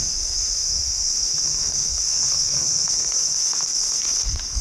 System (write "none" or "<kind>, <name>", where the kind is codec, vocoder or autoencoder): codec, SNAC